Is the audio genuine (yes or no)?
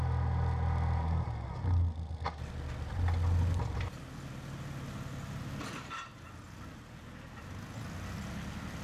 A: yes